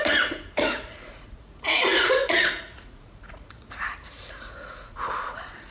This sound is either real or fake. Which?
fake